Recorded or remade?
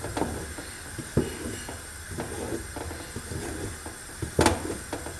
recorded